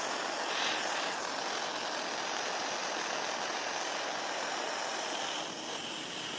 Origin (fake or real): real